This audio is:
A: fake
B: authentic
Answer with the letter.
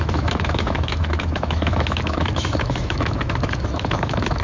A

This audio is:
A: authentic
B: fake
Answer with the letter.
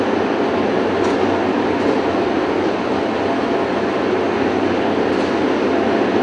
A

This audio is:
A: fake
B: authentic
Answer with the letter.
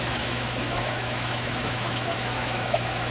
A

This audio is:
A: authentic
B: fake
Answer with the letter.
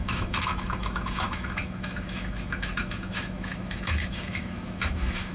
B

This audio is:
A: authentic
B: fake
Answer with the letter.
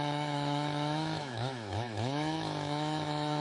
B